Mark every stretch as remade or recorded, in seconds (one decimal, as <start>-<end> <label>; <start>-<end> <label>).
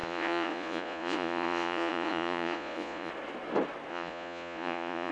0.0-3.1 remade; 3.1-3.9 recorded; 3.9-5.1 remade